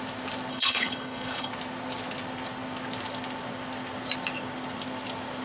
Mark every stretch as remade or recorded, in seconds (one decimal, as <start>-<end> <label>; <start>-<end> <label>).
0.0-0.5 recorded; 0.5-1.5 remade; 1.5-5.4 recorded